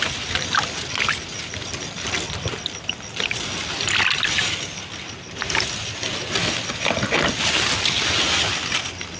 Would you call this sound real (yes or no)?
yes